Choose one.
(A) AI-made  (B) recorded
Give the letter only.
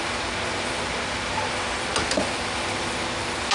B